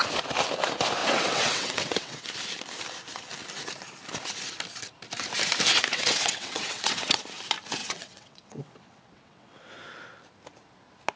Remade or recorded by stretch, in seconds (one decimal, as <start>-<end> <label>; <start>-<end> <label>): 0.0-1.0 recorded; 1.0-2.3 remade; 2.3-5.9 recorded; 5.9-7.2 remade; 7.2-7.8 recorded; 7.8-9.7 remade; 9.7-11.2 recorded